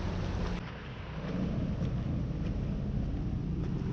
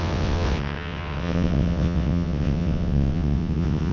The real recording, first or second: first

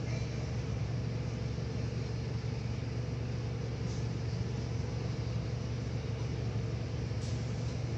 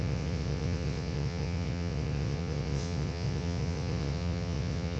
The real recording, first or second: first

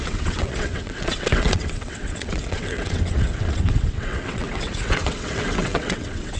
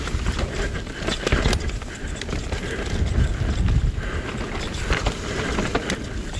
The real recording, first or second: second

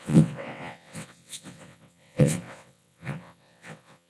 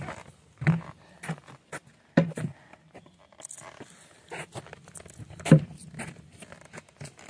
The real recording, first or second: second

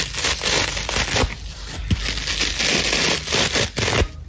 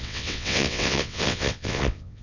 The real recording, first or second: first